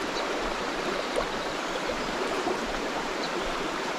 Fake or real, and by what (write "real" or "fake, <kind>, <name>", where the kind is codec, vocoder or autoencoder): fake, vocoder, BigVGAN v2